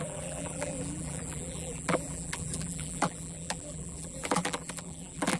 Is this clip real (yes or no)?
no